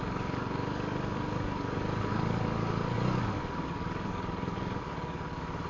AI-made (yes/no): yes